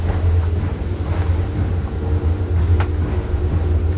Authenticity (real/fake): real